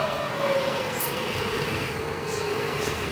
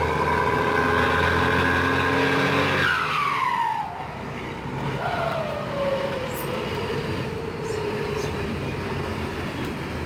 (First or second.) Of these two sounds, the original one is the second